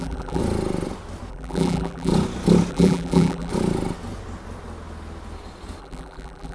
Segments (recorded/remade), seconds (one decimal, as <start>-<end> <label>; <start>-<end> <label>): 0.0-0.4 remade; 0.4-1.3 recorded; 1.3-2.1 remade; 2.1-2.7 recorded; 2.7-3.5 remade; 3.5-5.8 recorded; 5.8-6.5 remade